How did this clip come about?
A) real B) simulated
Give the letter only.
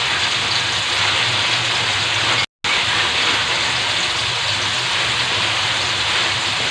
A